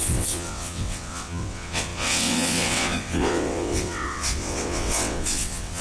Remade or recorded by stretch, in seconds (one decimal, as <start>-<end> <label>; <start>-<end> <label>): 0.0-5.8 remade